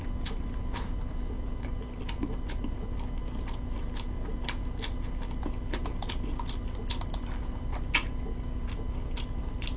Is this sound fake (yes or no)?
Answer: no